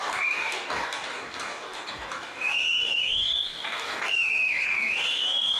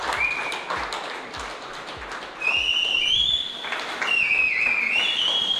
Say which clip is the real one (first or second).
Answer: second